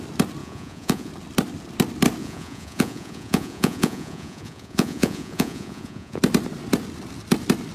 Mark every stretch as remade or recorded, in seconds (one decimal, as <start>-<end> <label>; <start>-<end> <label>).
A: 0.0-0.4 recorded; 0.4-1.1 remade; 1.1-2.2 recorded; 2.2-6.2 remade; 6.2-7.7 recorded